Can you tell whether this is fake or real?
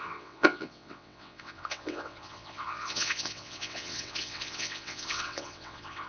fake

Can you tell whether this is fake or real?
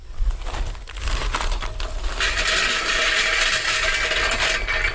real